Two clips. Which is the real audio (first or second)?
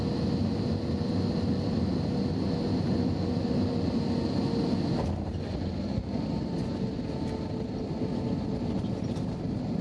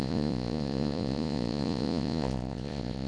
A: first